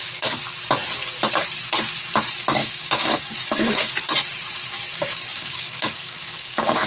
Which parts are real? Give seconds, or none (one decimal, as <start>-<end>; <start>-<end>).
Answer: 0.0-2.6; 4.0-4.9